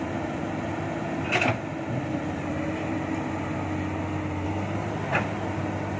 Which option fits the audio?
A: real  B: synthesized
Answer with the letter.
A